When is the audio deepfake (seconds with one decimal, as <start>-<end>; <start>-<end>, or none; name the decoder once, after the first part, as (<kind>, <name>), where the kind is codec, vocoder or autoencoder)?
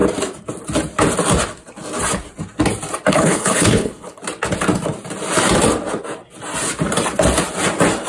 3.1-4.2 (codec, HILCodec)